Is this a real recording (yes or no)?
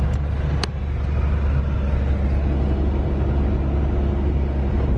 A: yes